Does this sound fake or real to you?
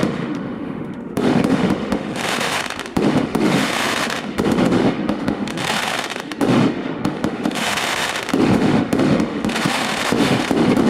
fake